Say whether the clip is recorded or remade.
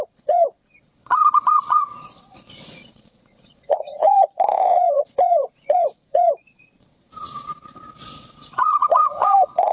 remade